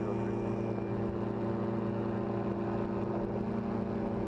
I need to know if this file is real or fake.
real